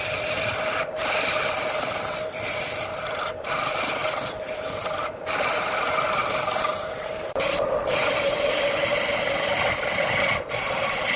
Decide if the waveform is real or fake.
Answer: real